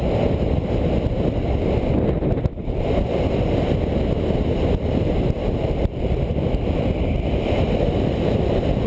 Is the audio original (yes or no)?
no